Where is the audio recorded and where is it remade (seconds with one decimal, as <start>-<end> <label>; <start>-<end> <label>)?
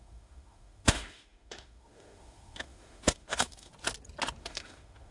0.0-3.7 remade; 3.7-4.4 recorded; 4.4-5.1 remade